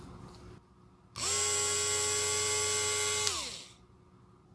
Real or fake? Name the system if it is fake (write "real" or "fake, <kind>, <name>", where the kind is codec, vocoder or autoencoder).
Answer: real